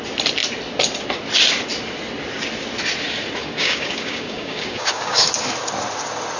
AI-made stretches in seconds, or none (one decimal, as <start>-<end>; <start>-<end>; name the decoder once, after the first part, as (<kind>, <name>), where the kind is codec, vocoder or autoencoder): 3.4-5.3 (codec, DAC)